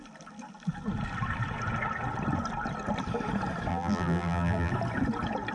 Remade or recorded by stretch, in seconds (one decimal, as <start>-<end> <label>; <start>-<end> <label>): 0.0-3.7 recorded; 3.7-4.7 remade; 4.7-5.5 recorded